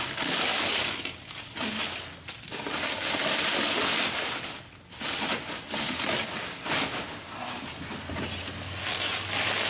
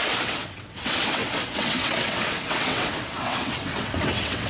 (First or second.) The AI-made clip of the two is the second